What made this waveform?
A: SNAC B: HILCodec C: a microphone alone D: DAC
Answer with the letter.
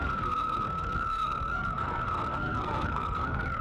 A